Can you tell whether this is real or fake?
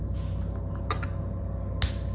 real